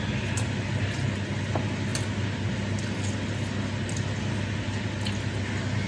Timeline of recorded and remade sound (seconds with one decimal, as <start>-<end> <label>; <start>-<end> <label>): 0.0-5.9 recorded